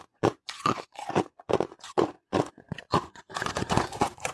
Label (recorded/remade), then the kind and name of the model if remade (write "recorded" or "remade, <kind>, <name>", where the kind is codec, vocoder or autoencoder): remade, vocoder, Vocos